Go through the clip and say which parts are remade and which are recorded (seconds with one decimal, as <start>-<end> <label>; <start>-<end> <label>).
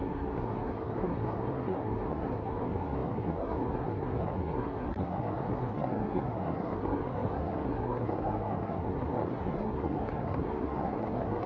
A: 0.0-11.5 remade